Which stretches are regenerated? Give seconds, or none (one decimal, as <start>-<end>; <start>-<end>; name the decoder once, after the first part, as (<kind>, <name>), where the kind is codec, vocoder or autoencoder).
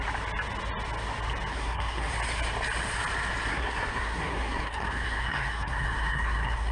1.5-2.1 (codec, SNAC); 3.5-6.7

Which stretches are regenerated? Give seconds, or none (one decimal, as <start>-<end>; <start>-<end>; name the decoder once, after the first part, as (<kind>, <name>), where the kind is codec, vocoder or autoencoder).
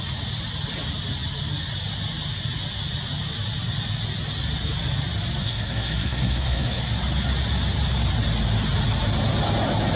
5.4-6.8 (codec, SNAC)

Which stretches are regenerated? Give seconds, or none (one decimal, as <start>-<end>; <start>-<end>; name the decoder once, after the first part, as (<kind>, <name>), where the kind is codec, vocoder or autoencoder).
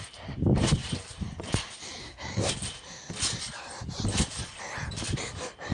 2.0-2.5 (codec, SNAC)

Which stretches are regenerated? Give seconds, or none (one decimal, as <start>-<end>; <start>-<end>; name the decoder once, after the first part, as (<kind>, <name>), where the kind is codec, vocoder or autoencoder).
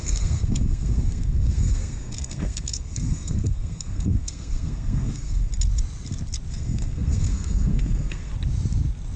0.0-5.5 (codec, SNAC); 6.5-8.3